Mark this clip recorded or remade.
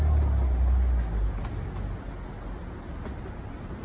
recorded